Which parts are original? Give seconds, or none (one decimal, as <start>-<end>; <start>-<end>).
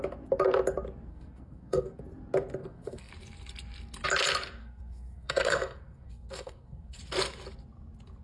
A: 0.0-1.1; 2.0-2.6; 3.1-4.6; 7.0-8.2